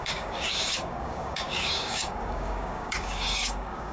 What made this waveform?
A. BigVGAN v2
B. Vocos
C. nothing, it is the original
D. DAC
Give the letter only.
D